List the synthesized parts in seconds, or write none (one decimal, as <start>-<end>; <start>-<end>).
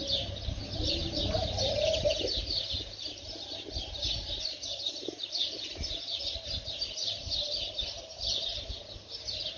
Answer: none